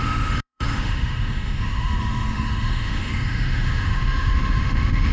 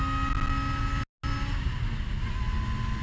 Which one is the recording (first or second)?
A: second